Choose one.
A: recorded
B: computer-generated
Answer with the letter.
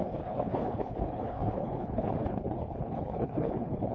B